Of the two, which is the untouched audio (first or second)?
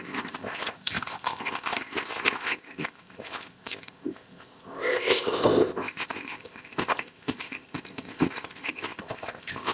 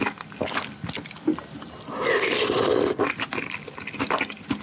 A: second